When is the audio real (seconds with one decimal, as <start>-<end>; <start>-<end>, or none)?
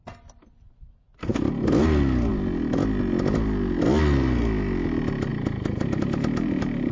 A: 0.0-5.3